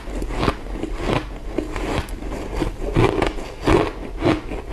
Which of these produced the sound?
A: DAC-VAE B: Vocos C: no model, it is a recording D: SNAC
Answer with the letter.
C